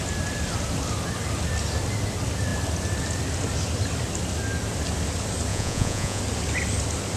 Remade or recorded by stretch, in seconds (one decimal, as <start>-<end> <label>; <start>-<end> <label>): 0.0-5.5 recorded; 5.5-6.2 remade; 6.2-7.2 recorded